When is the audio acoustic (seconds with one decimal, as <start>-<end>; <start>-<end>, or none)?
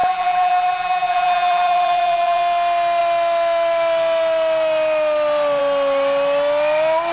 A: 2.4-7.1